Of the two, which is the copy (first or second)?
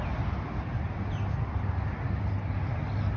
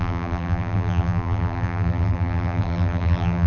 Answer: second